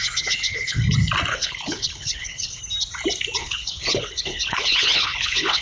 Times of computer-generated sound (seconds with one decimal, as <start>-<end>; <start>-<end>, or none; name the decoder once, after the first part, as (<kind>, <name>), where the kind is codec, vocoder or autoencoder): 0.0-0.8 (codec, HILCodec); 1.3-2.6; 3.4-5.6